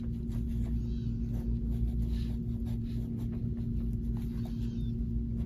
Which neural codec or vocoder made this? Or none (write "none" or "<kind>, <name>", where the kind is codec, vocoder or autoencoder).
none